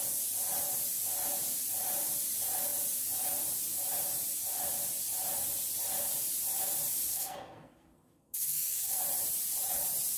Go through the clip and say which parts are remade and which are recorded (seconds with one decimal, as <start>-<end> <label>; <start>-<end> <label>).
0.0-7.1 recorded; 7.1-9.0 remade; 9.0-10.2 recorded